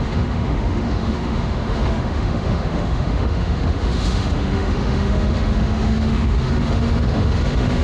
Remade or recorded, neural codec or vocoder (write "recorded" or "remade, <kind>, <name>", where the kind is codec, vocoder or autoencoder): remade, autoencoder, DAC-VAE